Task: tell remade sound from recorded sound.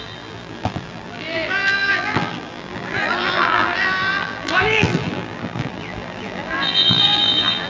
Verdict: remade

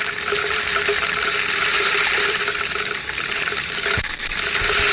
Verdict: remade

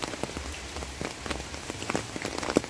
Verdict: recorded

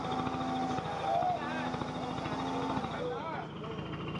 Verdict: recorded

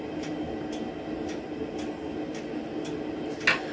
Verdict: recorded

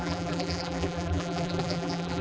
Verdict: remade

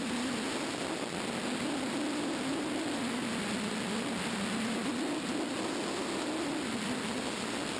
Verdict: recorded